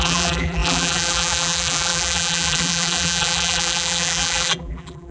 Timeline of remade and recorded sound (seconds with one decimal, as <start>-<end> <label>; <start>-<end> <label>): 0.0-5.1 remade